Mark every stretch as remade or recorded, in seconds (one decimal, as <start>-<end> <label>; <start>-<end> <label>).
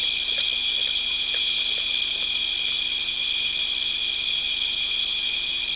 0.0-5.8 recorded